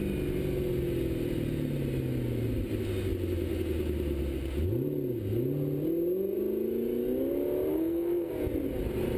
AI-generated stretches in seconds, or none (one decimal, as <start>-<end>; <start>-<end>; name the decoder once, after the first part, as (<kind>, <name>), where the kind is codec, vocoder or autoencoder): 7.7-8.3 (codec, SNAC)